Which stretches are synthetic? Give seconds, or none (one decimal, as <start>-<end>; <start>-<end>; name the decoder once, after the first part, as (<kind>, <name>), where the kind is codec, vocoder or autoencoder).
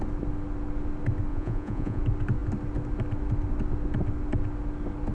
1.3-2.0 (vocoder, Vocos)